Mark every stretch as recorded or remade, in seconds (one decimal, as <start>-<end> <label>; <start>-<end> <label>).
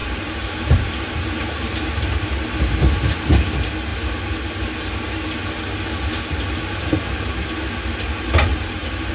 0.0-2.3 remade; 2.3-8.5 recorded; 8.5-9.1 remade